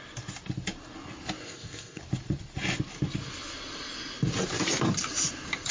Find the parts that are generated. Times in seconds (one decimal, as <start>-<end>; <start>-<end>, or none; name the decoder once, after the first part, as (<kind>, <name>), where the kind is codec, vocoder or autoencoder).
1.4-2.0 (codec, ZipCodec)